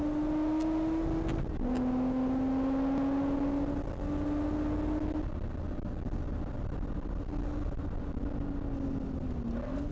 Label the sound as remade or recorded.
recorded